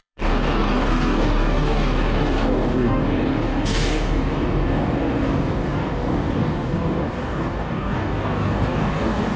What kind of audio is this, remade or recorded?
remade